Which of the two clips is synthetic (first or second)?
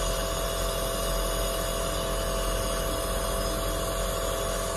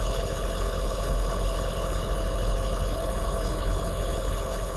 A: second